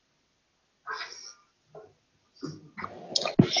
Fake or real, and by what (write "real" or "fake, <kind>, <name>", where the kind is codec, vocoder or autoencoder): real